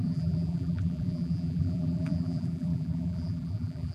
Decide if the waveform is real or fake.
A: fake